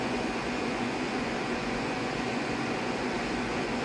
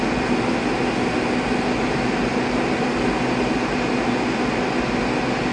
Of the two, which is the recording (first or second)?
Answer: second